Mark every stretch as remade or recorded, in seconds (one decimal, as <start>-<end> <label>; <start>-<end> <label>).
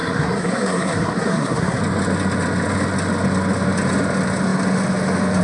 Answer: 0.0-1.8 remade; 1.8-5.4 recorded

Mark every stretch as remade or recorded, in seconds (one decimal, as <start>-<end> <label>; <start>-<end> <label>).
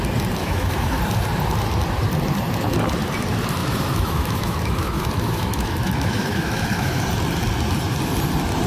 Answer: 0.0-0.4 recorded; 0.4-1.0 remade; 1.0-3.6 recorded; 3.6-7.0 remade; 7.0-8.7 recorded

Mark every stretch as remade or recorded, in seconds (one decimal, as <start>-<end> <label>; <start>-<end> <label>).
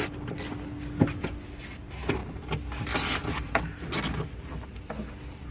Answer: 0.0-5.5 recorded